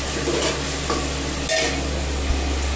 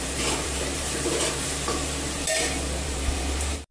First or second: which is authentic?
first